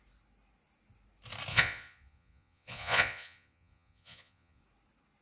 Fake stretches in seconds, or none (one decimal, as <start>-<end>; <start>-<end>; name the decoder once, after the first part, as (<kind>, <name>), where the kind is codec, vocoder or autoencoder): 1.5-4.6 (vocoder, Vocos)